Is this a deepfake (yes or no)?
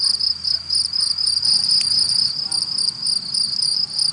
no